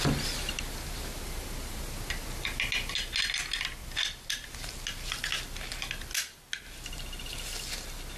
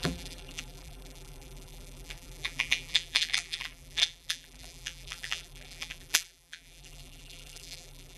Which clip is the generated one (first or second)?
second